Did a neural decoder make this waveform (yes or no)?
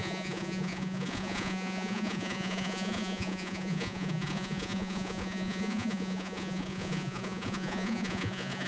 yes